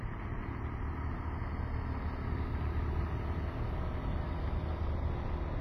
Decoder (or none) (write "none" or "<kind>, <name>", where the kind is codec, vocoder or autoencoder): none